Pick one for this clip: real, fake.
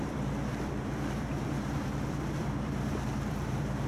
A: fake